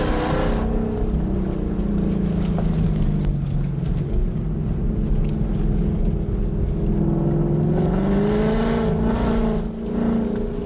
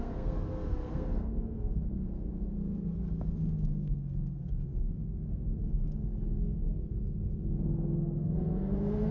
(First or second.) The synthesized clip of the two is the second